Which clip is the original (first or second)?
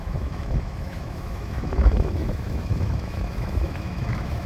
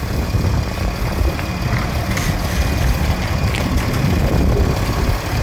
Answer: second